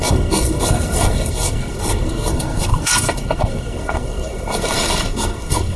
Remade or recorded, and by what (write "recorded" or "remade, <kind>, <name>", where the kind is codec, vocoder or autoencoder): remade, codec, SNAC